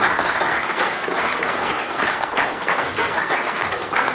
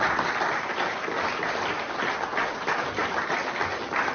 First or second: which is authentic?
second